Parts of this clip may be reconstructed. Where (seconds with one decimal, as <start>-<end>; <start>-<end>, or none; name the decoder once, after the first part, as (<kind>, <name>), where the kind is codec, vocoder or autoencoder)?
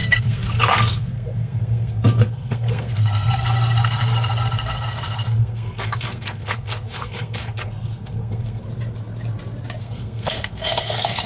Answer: 0.0-8.6 (codec, SNAC); 9.8-11.3